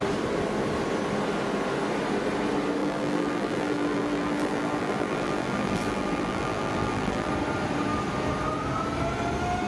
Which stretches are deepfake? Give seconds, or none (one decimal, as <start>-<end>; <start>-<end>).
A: 2.8-7.3